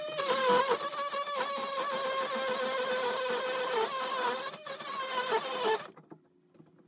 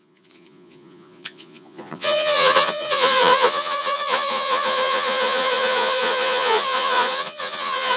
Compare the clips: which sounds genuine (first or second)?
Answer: first